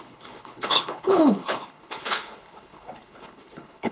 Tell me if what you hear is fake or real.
fake